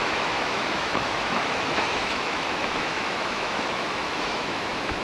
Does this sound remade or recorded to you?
remade